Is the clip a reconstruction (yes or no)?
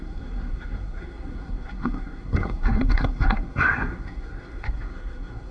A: yes